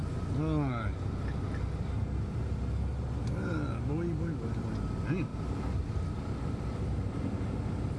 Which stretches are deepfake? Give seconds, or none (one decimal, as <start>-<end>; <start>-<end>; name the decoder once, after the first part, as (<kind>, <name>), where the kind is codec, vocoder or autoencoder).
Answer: none